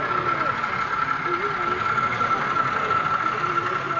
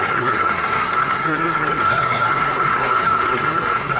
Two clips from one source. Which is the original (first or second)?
first